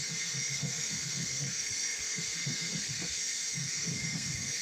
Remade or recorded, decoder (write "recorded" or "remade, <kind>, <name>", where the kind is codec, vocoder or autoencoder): remade, codec, SNAC